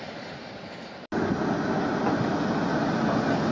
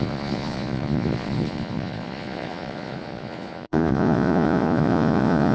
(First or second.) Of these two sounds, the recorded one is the first